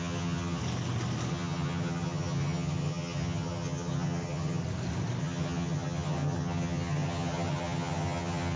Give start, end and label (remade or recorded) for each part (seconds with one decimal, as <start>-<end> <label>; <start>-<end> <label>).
0.0-0.6 remade; 0.6-1.3 recorded; 1.3-4.6 remade; 4.6-5.2 recorded; 5.2-8.6 remade